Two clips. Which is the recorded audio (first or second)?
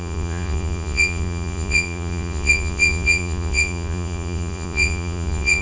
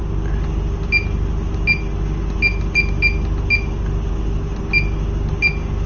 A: second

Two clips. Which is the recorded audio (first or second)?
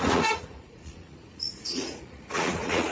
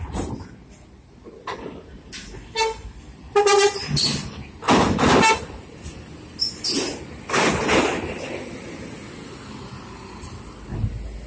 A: second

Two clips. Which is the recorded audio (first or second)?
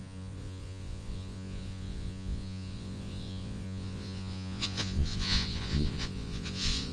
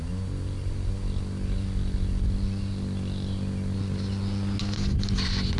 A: second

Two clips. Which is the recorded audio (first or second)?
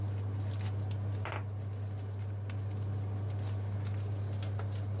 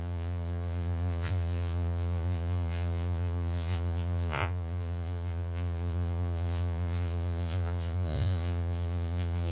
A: first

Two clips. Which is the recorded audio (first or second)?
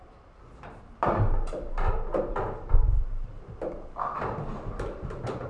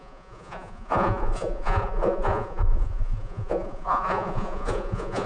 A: first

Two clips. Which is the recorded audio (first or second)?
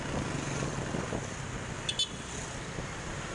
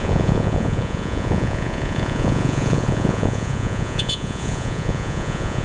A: first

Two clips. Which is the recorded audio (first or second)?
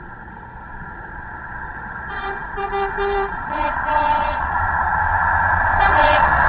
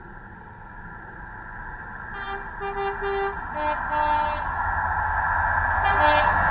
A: second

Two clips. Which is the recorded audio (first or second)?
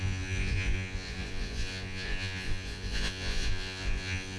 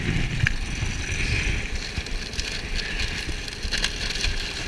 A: second